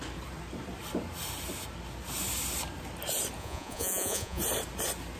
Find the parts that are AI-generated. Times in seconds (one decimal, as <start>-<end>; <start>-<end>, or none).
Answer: 3.4-4.4